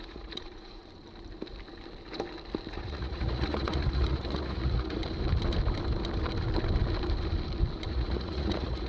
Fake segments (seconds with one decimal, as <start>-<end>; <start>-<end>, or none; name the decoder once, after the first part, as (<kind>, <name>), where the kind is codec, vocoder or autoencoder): 0.0-0.8 (vocoder, Vocos); 2.7-5.0; 7.9-8.9

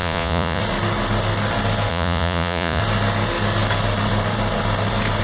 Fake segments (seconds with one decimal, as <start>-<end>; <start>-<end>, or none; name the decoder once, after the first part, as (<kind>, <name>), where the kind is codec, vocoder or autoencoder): 0.0-0.6 (vocoder, Vocos); 1.9-2.8